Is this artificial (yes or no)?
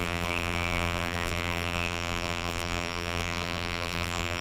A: yes